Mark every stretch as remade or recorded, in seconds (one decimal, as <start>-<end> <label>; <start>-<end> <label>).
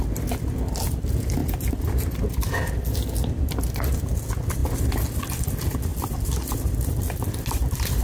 0.0-1.4 recorded; 1.4-2.2 remade; 2.2-5.9 recorded; 5.9-8.0 remade